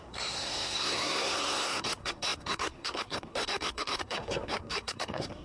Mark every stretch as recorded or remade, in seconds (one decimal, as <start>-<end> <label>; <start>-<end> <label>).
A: 0.0-5.4 remade